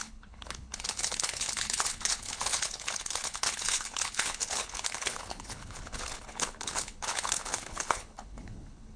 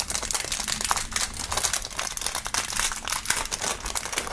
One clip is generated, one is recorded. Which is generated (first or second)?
first